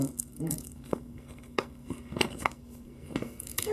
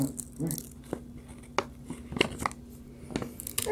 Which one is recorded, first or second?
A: second